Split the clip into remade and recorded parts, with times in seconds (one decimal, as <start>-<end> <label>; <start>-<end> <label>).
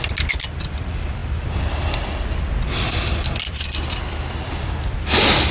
0.0-5.5 recorded